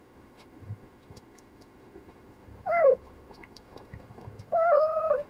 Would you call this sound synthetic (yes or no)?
yes